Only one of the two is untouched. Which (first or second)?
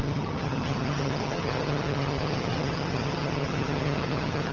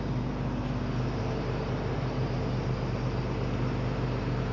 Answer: second